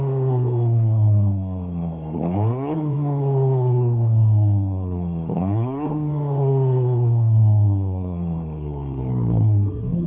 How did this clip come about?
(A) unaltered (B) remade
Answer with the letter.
B